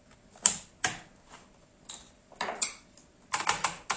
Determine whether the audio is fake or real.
real